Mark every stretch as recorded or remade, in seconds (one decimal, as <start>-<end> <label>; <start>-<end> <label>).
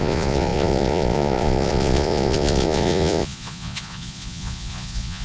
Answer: 0.0-5.2 remade